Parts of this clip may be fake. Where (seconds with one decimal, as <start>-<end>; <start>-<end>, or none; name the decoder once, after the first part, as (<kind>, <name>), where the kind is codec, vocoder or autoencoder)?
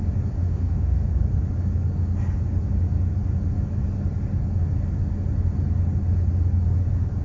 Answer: 0.4-1.1 (autoencoder, DAC-VAE)